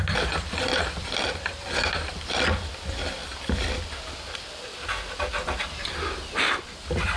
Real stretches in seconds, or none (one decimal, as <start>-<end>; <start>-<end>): 0.0-7.2